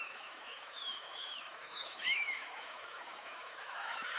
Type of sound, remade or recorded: remade